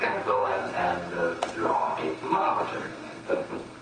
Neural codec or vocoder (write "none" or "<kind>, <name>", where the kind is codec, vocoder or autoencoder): codec, SNAC